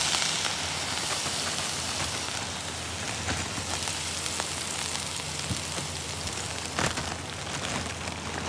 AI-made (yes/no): no